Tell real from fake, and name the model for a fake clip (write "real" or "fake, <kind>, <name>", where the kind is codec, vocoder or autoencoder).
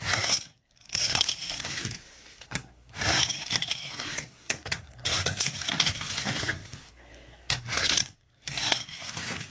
fake, codec, SNAC